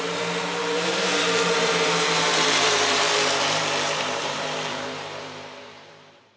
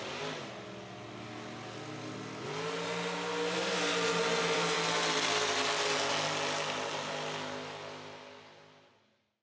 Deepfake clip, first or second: first